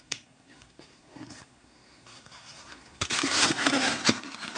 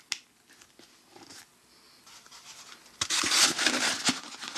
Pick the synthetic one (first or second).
first